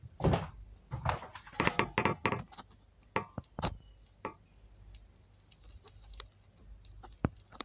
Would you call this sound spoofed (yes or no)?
no